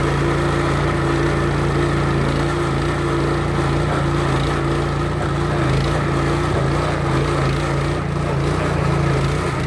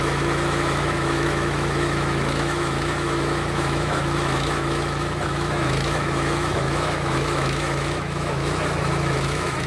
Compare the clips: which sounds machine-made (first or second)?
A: second